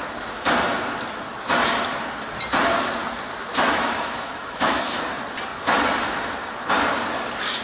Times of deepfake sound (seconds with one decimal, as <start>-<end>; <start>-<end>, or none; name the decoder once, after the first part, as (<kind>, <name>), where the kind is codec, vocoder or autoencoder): 3.5-5.0 (autoencoder, DAC-VAE)